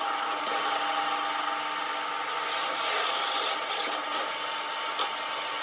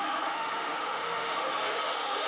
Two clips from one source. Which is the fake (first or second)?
second